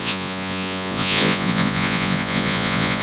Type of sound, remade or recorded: remade